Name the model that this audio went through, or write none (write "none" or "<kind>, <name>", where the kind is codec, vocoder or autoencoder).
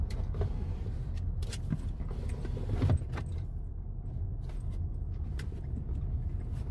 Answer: vocoder, BigVGAN v2